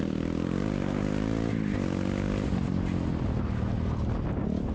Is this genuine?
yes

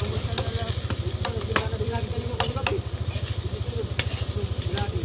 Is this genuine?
yes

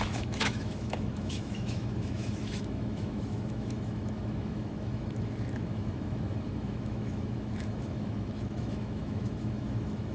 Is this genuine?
no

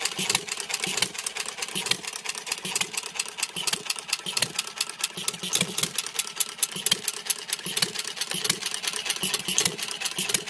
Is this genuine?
yes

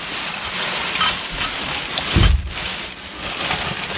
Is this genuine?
yes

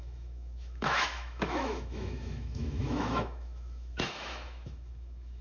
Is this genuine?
no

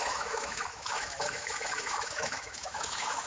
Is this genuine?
no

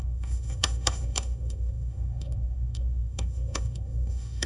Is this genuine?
no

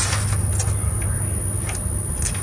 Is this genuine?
yes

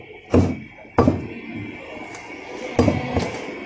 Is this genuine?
yes